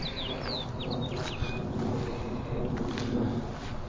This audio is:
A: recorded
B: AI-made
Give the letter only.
A